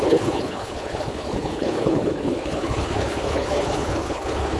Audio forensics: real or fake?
fake